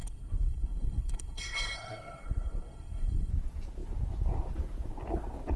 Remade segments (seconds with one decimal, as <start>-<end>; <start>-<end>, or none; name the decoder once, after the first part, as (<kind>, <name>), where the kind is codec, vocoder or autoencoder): 0.0-3.3 (codec, SNAC)